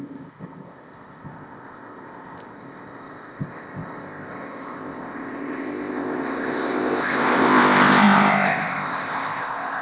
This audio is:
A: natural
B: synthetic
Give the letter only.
B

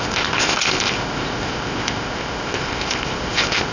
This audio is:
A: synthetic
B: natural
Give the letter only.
A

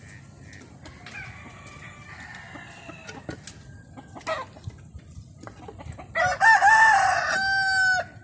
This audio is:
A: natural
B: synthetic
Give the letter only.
A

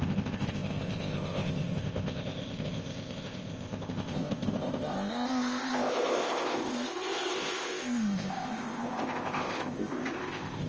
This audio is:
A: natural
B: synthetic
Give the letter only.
B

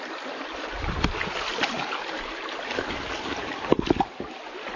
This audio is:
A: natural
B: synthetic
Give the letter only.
A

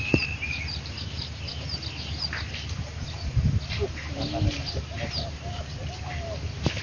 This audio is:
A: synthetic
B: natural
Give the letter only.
B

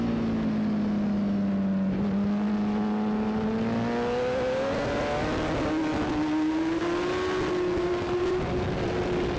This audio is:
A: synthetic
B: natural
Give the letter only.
B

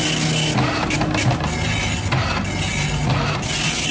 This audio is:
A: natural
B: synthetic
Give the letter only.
A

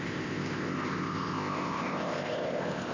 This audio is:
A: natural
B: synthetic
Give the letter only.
B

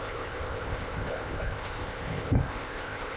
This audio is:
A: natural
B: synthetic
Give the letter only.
B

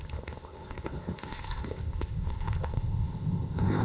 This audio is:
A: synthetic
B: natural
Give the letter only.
A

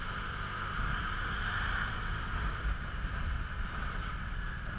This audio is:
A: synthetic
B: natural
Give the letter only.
B